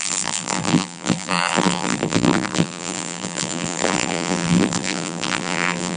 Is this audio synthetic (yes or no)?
yes